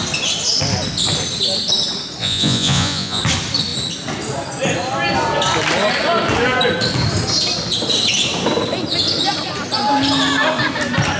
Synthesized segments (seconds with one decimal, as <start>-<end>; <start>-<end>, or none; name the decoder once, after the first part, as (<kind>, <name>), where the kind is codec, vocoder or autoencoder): 2.2-3.2 (vocoder, Vocos)